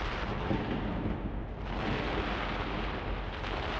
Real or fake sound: real